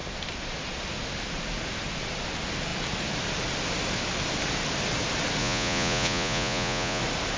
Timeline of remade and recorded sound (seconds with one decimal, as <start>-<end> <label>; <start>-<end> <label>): 0.0-5.4 recorded; 5.4-7.0 remade; 7.0-7.4 recorded